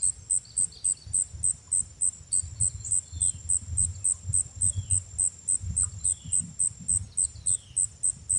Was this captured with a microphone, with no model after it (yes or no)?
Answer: yes